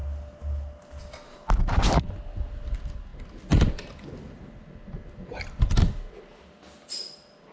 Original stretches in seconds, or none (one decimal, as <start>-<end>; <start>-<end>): 0.0-7.5